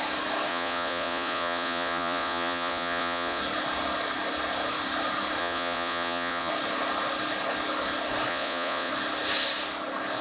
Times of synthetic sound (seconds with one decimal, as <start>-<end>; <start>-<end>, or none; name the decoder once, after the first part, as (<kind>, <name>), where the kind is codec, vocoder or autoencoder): 0.5-3.4 (vocoder, Vocos); 5.4-6.5; 8.3-8.9